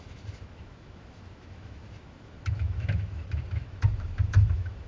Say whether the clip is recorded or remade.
remade